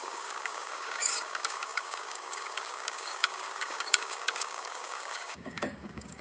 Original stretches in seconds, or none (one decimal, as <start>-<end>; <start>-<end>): none